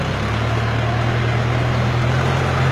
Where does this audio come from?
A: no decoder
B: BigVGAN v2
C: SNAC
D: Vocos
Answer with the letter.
A